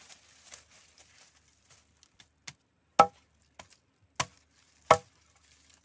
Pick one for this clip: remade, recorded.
recorded